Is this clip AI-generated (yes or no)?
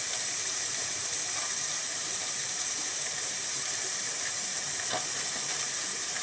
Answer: yes